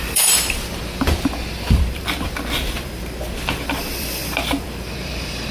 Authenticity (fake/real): fake